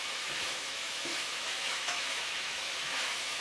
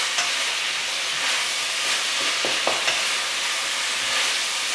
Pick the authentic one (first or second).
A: second